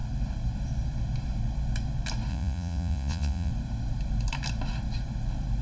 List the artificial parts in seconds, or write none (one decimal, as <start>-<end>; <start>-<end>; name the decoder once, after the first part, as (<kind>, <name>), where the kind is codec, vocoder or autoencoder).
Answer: 2.3-3.5 (vocoder, Vocos)